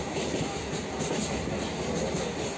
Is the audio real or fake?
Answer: real